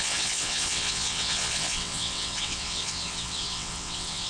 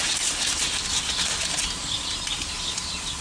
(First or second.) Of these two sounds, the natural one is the second